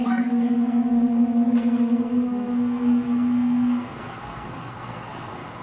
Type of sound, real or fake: fake